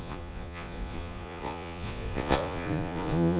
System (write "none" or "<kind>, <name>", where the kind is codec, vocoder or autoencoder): vocoder, Vocos